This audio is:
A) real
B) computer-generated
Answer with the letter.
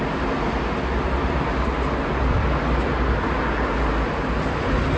A